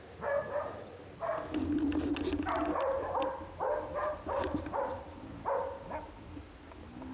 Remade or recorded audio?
recorded